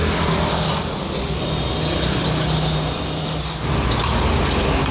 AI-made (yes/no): no